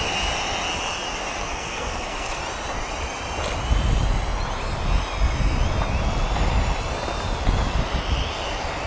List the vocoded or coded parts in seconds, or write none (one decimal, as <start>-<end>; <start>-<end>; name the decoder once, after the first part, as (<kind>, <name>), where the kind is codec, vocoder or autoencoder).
1.4-2.4 (codec, SNAC)